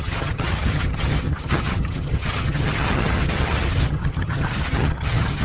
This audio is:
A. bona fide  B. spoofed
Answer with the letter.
B